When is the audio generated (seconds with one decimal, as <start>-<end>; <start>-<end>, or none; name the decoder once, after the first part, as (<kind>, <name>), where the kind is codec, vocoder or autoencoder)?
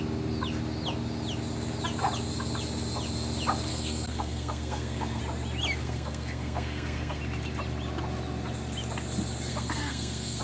3.7-5.2 (codec, SNAC); 5.8-7.2; 9.5-10.4